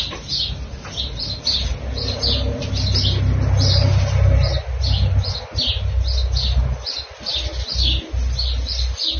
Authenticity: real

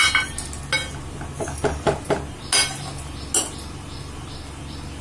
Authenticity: real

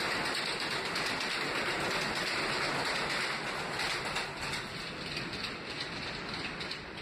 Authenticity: real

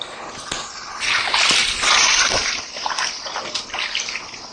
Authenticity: real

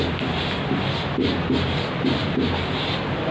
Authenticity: fake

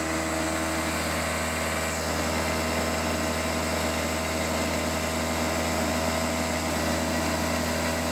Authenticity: real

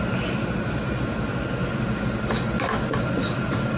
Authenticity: real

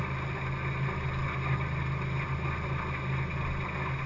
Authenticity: real